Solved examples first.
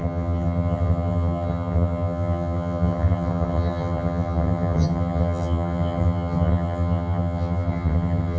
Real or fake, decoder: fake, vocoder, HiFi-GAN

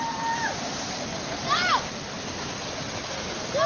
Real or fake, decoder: real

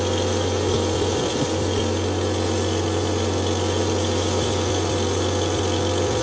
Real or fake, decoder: real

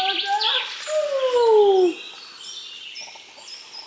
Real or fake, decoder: real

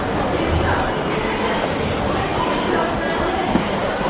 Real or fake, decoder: real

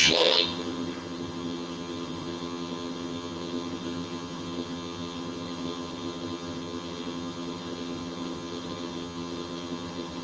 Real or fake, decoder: fake, vocoder, HiFi-GAN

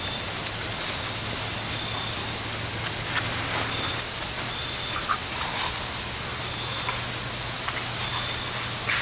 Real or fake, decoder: real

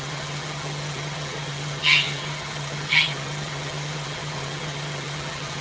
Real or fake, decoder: fake, vocoder, HiFi-GAN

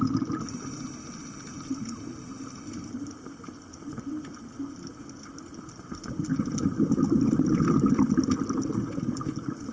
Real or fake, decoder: real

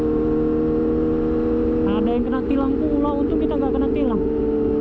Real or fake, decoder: real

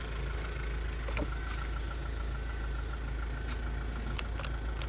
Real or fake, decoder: real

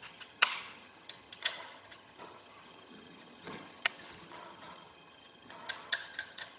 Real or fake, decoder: fake, vocoder, HiFi-GAN